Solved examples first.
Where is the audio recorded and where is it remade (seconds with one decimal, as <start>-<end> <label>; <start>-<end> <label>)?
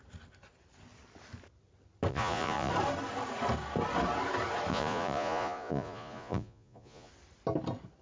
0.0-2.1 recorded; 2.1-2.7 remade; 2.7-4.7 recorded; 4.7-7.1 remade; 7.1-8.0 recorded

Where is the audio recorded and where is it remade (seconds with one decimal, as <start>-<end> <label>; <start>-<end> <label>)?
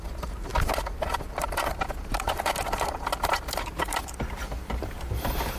0.0-5.6 recorded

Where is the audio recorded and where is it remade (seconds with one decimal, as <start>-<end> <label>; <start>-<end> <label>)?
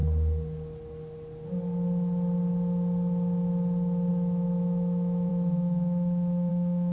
0.0-4.1 recorded; 4.1-6.9 remade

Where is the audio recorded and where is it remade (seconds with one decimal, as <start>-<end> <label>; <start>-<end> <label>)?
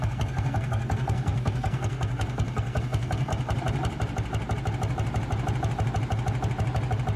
0.0-3.3 remade; 3.3-7.2 recorded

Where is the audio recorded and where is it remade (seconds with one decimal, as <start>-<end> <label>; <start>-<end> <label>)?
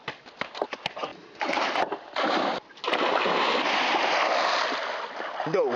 0.0-1.1 recorded; 1.1-4.2 remade; 4.2-5.8 recorded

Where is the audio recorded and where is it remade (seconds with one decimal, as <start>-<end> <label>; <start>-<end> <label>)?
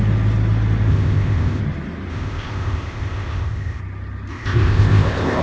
0.0-0.9 recorded; 0.9-1.6 remade; 1.6-2.1 recorded; 2.1-3.8 remade; 3.8-4.3 recorded; 4.3-5.4 remade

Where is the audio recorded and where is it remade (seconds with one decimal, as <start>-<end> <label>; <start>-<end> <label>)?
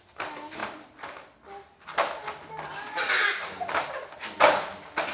0.0-5.1 recorded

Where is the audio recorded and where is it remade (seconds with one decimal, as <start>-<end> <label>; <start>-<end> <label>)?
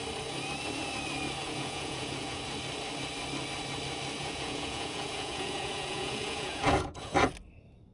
0.0-1.4 recorded; 1.4-2.4 remade; 2.4-4.2 recorded; 4.2-7.3 remade; 7.3-7.9 recorded